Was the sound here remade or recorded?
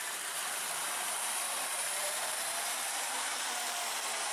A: remade